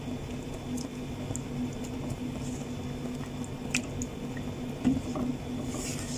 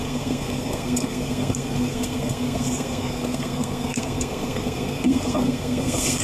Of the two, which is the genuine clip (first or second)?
first